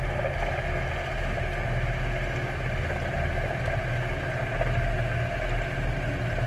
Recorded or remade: recorded